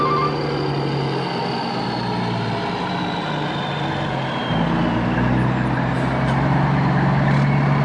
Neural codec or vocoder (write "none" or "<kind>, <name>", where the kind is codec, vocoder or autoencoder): none